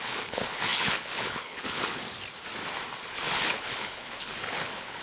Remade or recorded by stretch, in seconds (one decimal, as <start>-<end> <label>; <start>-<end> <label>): 0.0-2.0 remade; 2.0-3.1 recorded; 3.1-5.0 remade